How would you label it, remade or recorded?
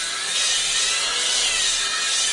recorded